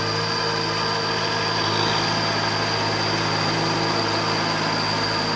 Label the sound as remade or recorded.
recorded